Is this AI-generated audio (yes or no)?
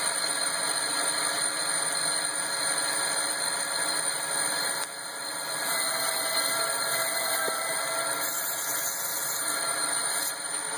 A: no